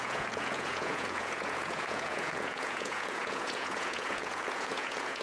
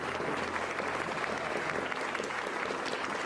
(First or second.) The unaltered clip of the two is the second